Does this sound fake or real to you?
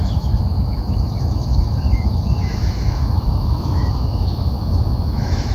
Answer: fake